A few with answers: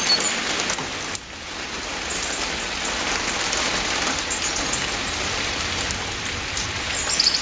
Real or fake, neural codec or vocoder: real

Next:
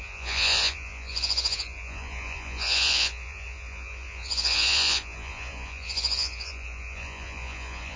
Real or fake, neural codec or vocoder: fake, vocoder, Vocos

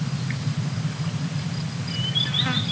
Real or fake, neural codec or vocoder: real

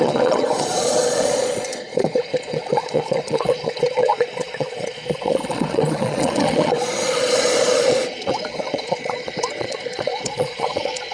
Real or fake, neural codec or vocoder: fake, vocoder, Vocos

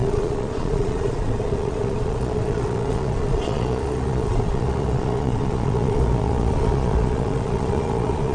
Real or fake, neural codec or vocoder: fake, vocoder, Vocos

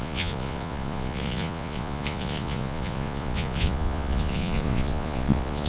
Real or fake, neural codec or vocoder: fake, vocoder, Vocos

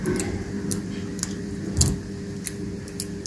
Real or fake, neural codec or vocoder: real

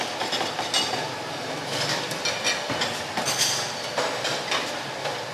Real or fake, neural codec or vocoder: real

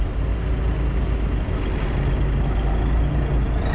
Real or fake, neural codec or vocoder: real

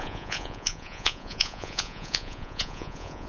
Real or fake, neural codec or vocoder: fake, vocoder, Vocos